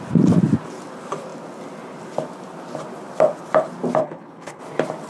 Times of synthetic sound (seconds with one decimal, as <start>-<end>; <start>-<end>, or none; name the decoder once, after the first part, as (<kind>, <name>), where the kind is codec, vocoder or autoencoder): 4.0-4.6 (codec, HILCodec)